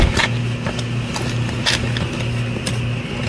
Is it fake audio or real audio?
real